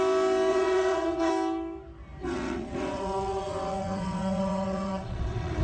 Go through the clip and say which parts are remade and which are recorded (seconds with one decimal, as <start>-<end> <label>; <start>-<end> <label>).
0.0-0.5 recorded; 0.5-1.3 remade; 1.3-2.2 recorded; 2.2-5.6 remade